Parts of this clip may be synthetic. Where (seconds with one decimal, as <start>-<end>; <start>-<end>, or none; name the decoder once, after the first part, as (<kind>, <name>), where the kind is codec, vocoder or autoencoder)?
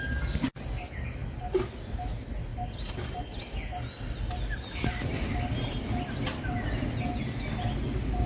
none